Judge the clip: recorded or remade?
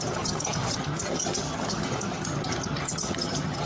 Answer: remade